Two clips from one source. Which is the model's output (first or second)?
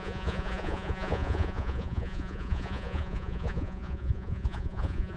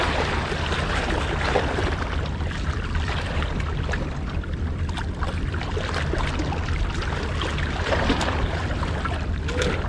first